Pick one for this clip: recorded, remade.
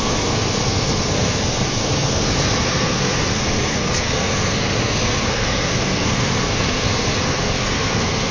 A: remade